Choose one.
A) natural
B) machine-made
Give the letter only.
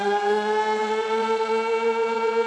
B